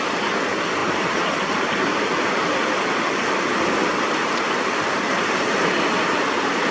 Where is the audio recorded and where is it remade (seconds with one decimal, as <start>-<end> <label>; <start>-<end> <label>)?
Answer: 0.0-0.8 recorded; 0.8-1.9 remade; 1.9-4.2 recorded; 4.2-5.6 remade; 5.6-6.7 recorded